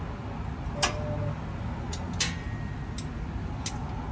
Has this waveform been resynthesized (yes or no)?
no